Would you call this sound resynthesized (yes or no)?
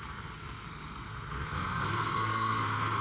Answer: yes